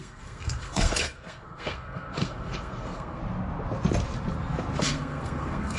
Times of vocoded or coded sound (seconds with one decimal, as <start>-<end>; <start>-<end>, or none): 0.0-3.2; 4.8-5.8